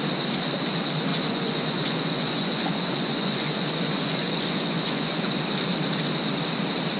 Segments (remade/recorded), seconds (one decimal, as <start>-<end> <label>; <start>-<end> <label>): 0.0-1.1 recorded; 1.1-5.3 remade; 5.3-7.0 recorded